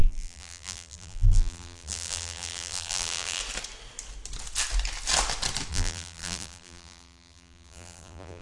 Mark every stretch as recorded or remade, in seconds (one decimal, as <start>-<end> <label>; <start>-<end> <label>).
0.0-3.4 remade; 3.4-5.7 recorded; 5.7-8.4 remade